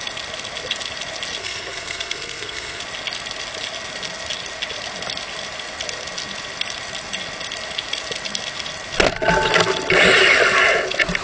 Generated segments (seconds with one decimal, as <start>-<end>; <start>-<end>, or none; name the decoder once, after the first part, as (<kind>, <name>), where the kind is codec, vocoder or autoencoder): 1.4-2.8 (codec, SNAC)